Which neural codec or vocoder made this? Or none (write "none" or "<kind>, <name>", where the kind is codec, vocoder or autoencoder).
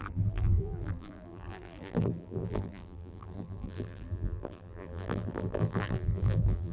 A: vocoder, BigVGAN v2